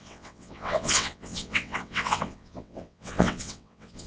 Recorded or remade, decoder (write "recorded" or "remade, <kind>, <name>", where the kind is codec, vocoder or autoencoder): remade, vocoder, WaveNeXt